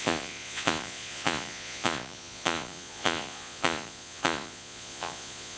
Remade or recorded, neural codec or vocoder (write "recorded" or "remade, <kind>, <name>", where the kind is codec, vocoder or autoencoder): remade, vocoder, Vocos